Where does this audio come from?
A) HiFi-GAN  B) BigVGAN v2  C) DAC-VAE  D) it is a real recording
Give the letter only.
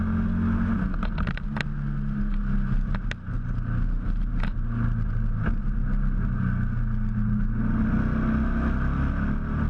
D